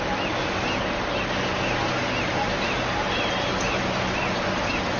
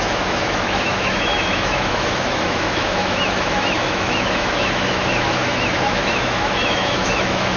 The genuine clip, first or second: first